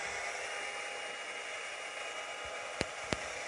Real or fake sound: real